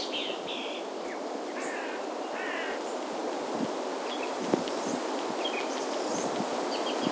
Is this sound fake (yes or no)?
no